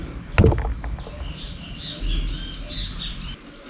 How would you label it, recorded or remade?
recorded